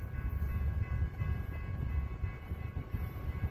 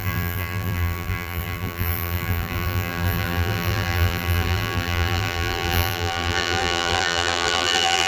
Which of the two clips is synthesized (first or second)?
second